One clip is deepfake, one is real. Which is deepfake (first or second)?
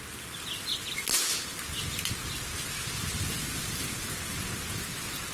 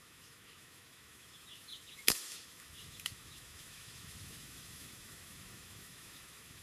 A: second